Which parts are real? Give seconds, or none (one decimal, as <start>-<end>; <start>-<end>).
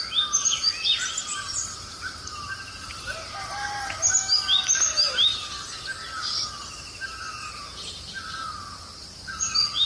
0.0-9.9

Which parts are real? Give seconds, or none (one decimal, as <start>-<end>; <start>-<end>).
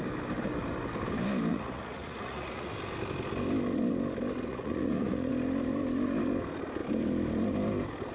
0.0-1.5; 2.7-4.5; 5.3-8.1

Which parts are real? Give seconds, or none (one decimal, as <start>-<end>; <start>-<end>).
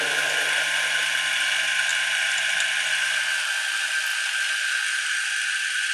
0.0-5.9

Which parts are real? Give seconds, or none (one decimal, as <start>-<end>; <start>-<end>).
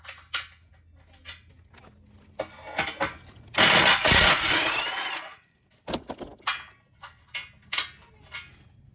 0.0-3.9; 5.7-8.9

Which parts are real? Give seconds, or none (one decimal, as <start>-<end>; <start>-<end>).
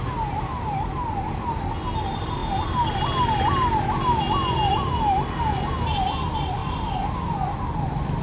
0.0-8.2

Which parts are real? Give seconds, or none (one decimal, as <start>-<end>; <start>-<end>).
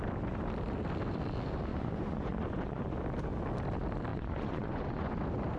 0.0-1.7; 2.8-4.1; 5.1-5.6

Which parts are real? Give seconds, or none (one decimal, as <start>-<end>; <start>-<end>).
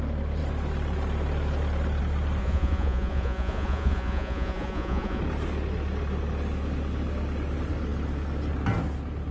0.0-2.4; 5.2-9.3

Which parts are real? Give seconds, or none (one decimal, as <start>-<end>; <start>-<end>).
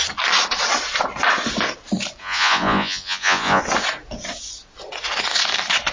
0.0-2.2; 3.6-5.9